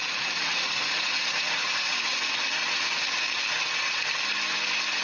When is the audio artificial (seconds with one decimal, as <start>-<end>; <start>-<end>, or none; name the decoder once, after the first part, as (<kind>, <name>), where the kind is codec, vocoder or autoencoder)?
0.0-2.1 (vocoder, Vocos)